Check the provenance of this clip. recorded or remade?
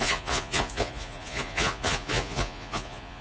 remade